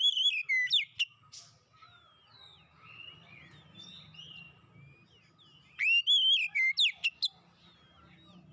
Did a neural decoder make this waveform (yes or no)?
no